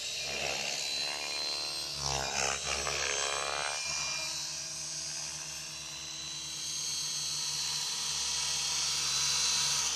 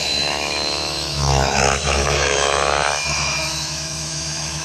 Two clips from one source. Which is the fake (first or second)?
second